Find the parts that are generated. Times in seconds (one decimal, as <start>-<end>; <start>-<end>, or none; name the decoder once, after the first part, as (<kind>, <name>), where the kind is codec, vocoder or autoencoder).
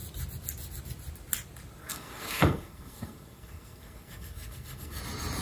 1.8-5.0 (codec, SNAC)